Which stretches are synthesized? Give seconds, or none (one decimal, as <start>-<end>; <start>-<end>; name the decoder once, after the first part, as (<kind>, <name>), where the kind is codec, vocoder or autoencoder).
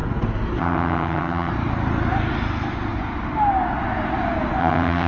0.6-1.5 (vocoder, HiFi-GAN); 4.6-5.1